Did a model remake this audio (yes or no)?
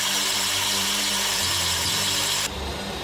yes